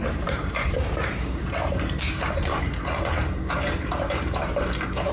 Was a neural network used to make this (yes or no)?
yes